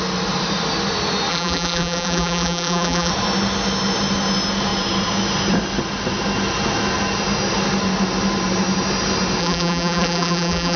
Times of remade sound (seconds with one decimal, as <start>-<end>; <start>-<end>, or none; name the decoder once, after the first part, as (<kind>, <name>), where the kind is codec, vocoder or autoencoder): 1.3-3.1 (vocoder, BigVGAN v2); 9.4-10.8